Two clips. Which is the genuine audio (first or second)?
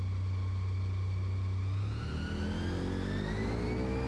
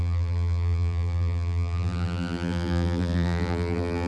first